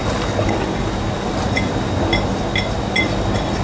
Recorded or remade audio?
recorded